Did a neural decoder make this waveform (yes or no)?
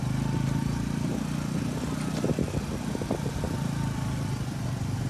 no